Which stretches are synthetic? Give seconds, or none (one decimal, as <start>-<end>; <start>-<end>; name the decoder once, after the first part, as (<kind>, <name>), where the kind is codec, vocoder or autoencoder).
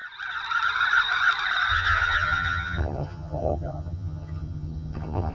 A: 1.7-5.3 (vocoder, HiFi-GAN)